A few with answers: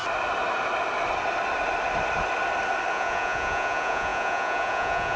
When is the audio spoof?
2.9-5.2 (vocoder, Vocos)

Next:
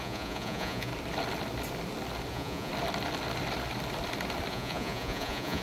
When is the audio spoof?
0.0-0.9 (vocoder, Vocos); 2.3-2.7; 4.5-5.6

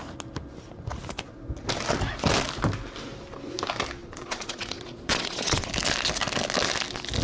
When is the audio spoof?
4.0-5.7 (vocoder, Vocos)